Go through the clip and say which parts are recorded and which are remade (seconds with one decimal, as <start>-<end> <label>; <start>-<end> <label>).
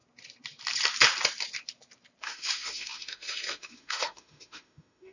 0.0-2.2 recorded; 2.2-5.1 remade